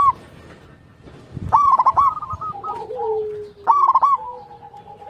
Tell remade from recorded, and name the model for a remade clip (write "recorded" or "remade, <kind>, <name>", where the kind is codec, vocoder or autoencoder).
recorded